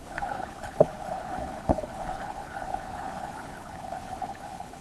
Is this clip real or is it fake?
fake